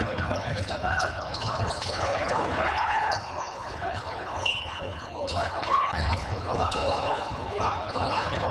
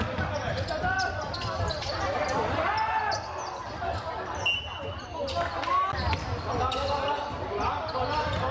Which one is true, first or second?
second